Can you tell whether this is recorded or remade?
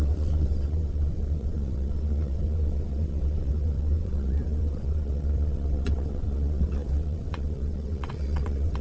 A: remade